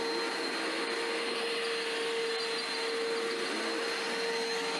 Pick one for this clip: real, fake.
real